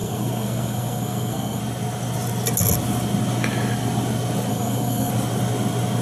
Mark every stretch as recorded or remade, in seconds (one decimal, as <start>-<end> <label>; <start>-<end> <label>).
0.0-1.6 remade; 1.6-4.5 recorded; 4.5-5.1 remade; 5.1-6.0 recorded